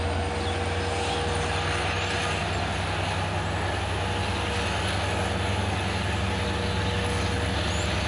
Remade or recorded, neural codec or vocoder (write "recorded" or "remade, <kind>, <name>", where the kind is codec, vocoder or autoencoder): recorded